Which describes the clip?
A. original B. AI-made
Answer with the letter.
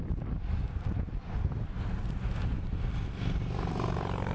A